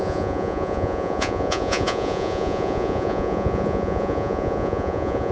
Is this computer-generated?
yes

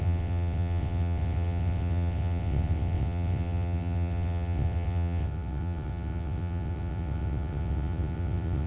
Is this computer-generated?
yes